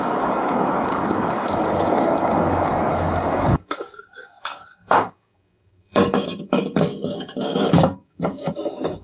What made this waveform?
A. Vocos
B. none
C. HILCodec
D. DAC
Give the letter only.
D